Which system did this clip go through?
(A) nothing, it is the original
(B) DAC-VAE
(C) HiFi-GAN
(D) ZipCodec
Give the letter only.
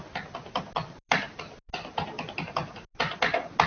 A